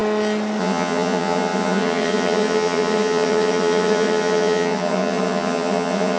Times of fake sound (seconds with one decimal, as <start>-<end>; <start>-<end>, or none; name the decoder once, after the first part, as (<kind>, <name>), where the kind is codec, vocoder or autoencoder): 0.6-6.2 (vocoder, HiFi-GAN)